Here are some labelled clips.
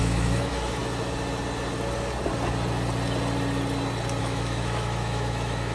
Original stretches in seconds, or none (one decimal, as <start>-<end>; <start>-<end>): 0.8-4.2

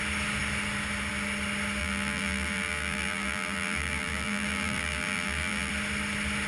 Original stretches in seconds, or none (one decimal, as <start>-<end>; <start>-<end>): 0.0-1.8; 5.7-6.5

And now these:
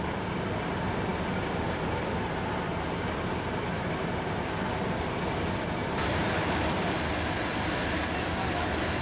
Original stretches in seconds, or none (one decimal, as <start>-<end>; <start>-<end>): 0.0-9.0

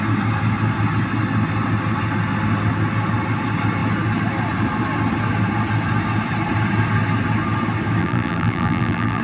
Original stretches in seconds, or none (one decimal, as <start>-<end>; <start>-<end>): 0.0-8.0